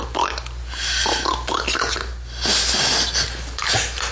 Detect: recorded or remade recorded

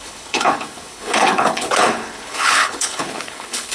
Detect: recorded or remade remade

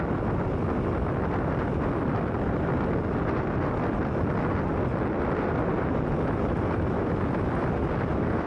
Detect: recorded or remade recorded